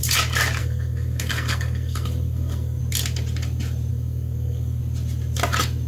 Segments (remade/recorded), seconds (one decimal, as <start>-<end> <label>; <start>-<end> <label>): 0.0-0.6 recorded; 0.6-2.8 remade; 2.8-3.9 recorded; 3.9-4.8 remade; 4.8-5.9 recorded